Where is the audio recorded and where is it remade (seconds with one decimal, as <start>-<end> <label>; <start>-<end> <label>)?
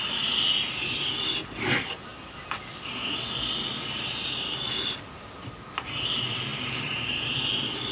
0.0-7.9 recorded